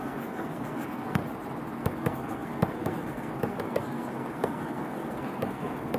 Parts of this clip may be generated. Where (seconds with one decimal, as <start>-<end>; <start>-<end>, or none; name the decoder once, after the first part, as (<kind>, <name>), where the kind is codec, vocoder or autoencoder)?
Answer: 0.0-1.2 (codec, SNAC); 1.8-6.0